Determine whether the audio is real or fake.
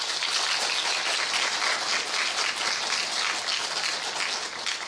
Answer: real